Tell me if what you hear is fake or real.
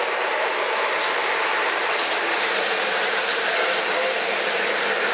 fake